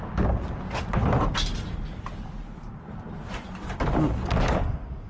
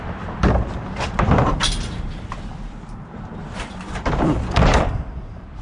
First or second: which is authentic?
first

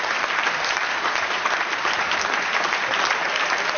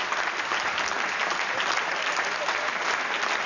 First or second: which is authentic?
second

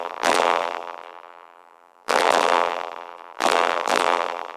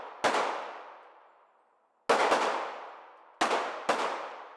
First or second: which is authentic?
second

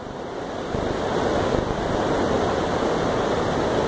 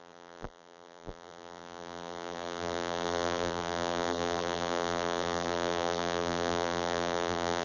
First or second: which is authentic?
first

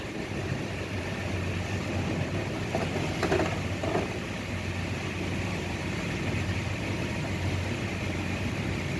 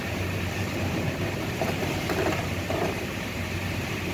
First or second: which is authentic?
first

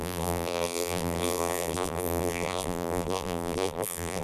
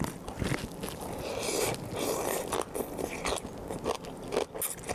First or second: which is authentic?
second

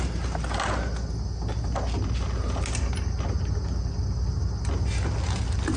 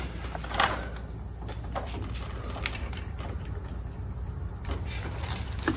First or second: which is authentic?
first